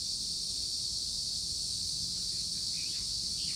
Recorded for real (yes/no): yes